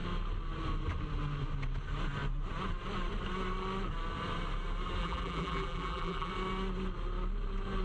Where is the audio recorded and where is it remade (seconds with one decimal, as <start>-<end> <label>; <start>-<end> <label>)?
0.0-5.0 recorded; 5.0-6.3 remade; 6.3-7.8 recorded